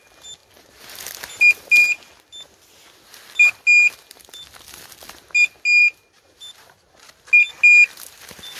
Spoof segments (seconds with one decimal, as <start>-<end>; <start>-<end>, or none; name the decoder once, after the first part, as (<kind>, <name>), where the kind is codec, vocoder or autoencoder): 5.8-6.9 (vocoder, BigVGAN v2)